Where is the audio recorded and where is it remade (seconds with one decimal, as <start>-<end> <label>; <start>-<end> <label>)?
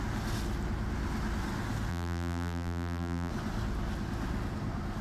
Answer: 0.0-1.9 recorded; 1.9-3.3 remade; 3.3-5.0 recorded